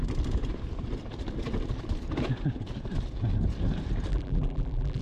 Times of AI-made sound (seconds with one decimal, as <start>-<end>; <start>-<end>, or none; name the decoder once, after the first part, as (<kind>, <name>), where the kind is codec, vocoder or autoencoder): 4.1-5.0 (vocoder, BigVGAN v2)